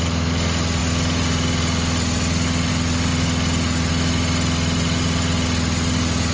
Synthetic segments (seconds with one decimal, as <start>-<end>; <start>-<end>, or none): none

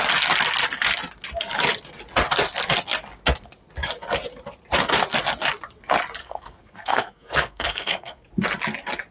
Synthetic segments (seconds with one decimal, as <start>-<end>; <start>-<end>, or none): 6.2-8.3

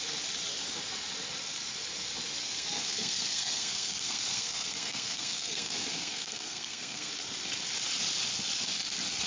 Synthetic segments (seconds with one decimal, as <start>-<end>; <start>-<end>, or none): 2.4-7.1

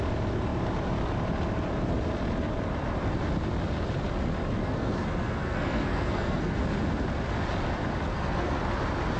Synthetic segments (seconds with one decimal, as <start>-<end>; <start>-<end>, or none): 4.6-6.6; 8.1-8.6

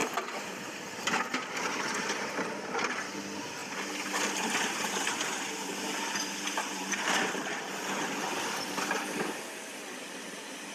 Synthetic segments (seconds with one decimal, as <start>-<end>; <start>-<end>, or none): none